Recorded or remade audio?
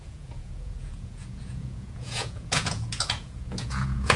remade